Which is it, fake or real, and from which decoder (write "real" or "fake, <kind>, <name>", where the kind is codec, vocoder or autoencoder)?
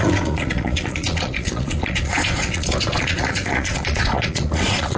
fake, vocoder, Vocos